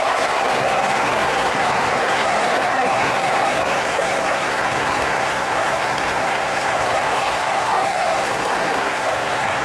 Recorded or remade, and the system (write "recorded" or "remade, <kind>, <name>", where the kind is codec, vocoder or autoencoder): remade, codec, SNAC